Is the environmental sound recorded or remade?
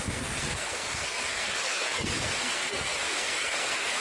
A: remade